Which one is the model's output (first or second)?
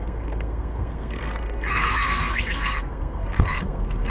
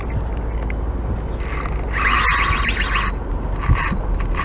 first